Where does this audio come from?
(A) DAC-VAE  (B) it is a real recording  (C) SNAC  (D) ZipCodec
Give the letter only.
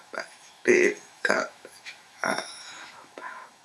A